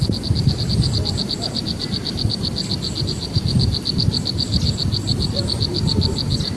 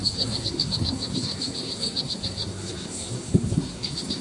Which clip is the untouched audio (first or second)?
first